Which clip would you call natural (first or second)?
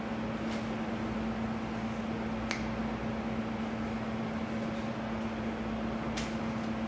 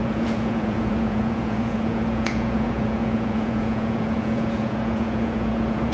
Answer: first